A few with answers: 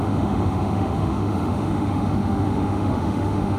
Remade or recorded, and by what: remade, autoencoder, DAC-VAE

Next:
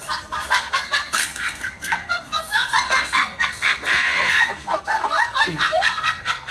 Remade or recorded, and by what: remade, codec, SNAC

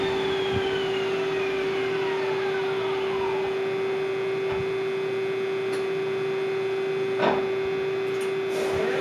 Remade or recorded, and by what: recorded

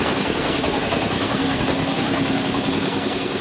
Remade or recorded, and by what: remade, codec, SNAC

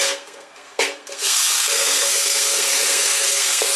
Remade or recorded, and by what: remade, codec, SNAC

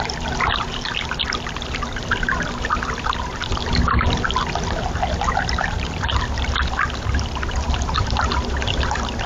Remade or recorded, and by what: recorded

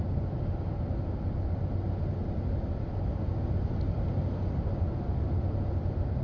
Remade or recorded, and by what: recorded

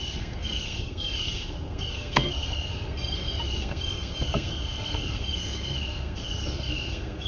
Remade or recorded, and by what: remade, codec, SNAC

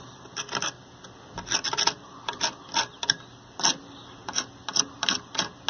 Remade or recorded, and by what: recorded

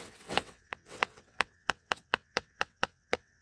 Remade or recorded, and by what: remade, vocoder, WaveNeXt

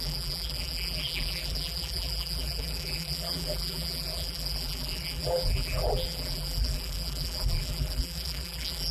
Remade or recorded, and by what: remade, vocoder, BigVGAN v2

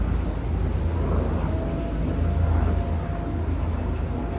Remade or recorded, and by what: recorded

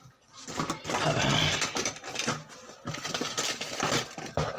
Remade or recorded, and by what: recorded